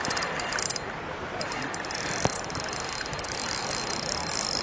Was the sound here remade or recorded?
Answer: recorded